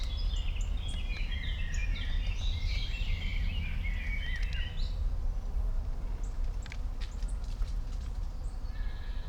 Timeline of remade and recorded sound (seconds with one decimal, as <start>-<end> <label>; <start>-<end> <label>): 0.0-9.3 recorded